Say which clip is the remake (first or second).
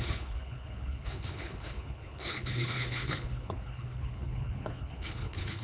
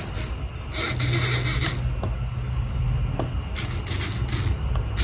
first